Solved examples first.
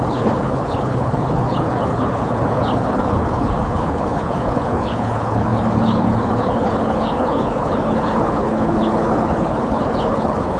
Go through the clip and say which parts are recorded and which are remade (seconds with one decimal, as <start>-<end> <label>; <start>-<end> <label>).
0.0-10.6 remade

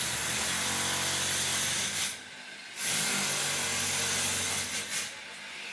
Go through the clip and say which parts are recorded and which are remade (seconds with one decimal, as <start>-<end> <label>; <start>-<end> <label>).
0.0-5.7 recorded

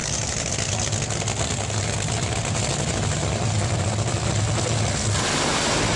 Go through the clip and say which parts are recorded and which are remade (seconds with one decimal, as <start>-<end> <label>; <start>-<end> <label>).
0.0-0.5 remade; 0.5-6.0 recorded

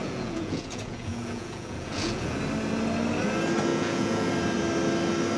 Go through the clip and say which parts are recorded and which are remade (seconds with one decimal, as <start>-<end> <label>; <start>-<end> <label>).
0.0-2.4 remade; 2.4-3.7 recorded; 3.7-4.3 remade; 4.3-5.4 recorded

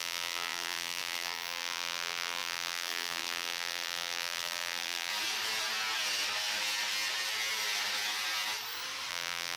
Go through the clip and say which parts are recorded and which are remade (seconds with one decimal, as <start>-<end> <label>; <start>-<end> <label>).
0.0-5.1 remade; 5.1-9.1 recorded; 9.1-9.6 remade